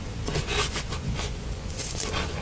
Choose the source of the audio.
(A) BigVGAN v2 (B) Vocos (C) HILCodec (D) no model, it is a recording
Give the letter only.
B